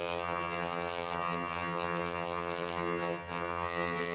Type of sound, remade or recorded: remade